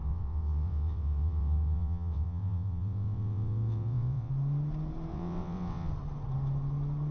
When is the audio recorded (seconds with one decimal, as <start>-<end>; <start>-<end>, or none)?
4.3-5.1; 5.9-7.1